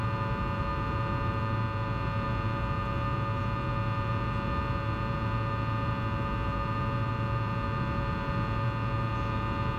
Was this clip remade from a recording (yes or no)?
yes